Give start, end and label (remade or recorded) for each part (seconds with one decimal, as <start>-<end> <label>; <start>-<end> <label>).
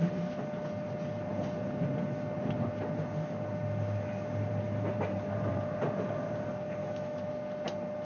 0.0-6.8 recorded; 6.8-7.3 remade; 7.3-8.0 recorded